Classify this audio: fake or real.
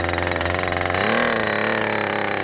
real